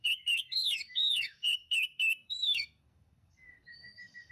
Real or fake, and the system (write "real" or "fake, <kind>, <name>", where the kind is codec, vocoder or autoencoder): fake, codec, SNAC